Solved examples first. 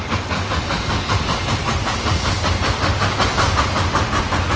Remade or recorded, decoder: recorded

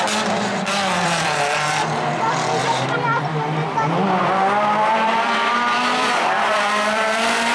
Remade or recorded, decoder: remade, vocoder, BigVGAN v2